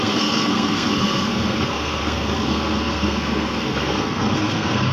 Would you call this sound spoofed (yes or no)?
yes